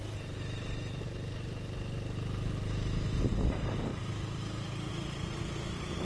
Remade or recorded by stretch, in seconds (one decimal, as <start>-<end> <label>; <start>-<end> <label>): 0.0-3.9 recorded; 3.9-4.9 remade; 4.9-6.0 recorded